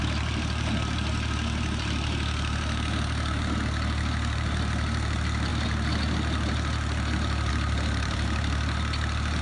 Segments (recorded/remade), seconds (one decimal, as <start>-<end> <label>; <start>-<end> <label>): 0.0-5.5 remade; 5.5-7.5 recorded; 7.5-9.4 remade